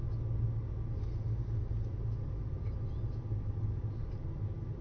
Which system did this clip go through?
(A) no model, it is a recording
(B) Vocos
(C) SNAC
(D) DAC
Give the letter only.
A